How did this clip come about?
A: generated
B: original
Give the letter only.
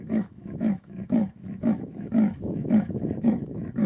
A